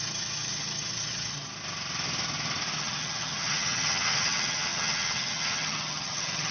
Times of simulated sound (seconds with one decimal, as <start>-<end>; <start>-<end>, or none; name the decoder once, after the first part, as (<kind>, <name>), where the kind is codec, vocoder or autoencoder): 0.0-1.5 (vocoder, HiFi-GAN); 2.8-6.5